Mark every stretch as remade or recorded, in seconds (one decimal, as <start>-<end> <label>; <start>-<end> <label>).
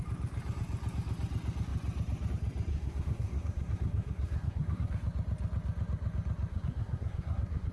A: 0.0-2.7 recorded; 2.7-4.9 remade; 4.9-6.5 recorded; 6.5-7.7 remade